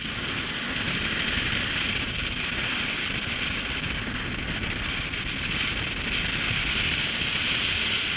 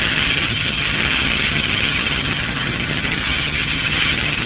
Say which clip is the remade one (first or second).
second